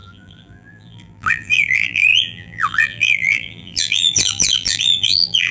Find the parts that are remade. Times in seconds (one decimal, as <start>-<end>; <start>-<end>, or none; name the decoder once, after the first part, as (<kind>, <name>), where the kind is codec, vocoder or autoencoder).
0.0-5.5 (vocoder, BigVGAN v2)